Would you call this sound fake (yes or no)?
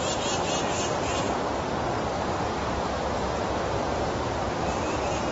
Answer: no